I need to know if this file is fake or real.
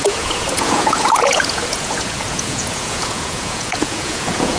fake